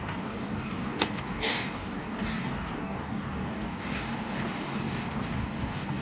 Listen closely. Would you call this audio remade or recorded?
remade